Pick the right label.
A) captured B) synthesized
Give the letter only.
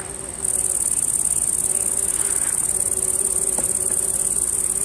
A